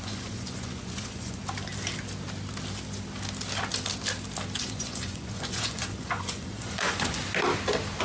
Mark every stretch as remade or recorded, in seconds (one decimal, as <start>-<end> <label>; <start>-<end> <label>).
0.0-1.4 remade; 1.4-4.6 recorded; 4.6-7.2 remade; 7.2-8.0 recorded